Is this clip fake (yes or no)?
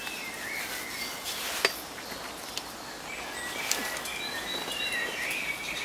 no